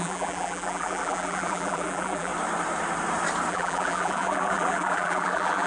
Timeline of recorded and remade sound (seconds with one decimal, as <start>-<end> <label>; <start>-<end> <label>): 0.0-2.3 remade; 2.3-3.5 recorded; 3.5-5.7 remade